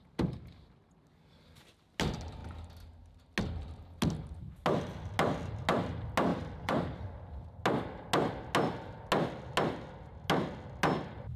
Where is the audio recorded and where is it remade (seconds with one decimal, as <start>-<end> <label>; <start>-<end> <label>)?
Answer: 0.0-6.3 recorded; 6.3-7.5 remade; 7.5-11.4 recorded